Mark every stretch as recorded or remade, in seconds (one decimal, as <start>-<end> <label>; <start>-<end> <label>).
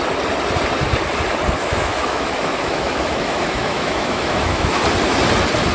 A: 0.0-1.6 recorded; 1.6-4.8 remade; 4.8-5.7 recorded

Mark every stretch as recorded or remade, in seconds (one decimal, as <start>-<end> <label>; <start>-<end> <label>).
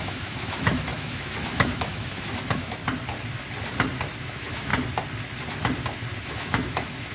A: 0.0-2.8 remade; 2.8-4.2 recorded; 4.2-4.7 remade; 4.7-6.2 recorded; 6.2-7.1 remade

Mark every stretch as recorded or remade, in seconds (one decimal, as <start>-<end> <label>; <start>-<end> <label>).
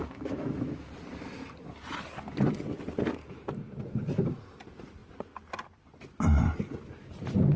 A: 0.0-0.9 remade; 0.9-3.2 recorded; 3.2-3.7 remade; 3.7-7.6 recorded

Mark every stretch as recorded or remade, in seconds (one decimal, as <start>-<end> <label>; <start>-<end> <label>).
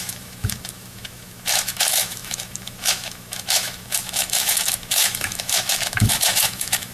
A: 0.0-6.9 remade